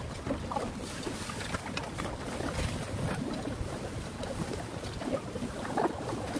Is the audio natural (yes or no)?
yes